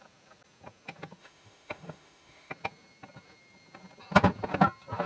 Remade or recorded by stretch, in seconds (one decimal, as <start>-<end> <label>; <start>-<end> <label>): 0.0-1.2 recorded; 1.2-2.5 remade; 2.5-5.1 recorded